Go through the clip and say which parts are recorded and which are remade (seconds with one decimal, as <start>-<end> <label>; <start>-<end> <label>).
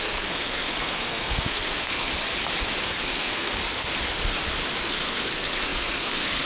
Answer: 0.0-2.1 remade; 2.1-2.8 recorded; 2.8-3.6 remade; 3.6-4.8 recorded; 4.8-6.5 remade